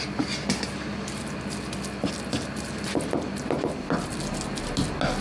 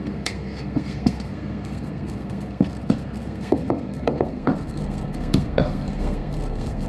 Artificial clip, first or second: second